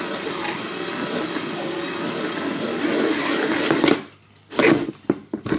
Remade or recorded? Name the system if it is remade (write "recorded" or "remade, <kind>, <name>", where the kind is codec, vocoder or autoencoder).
recorded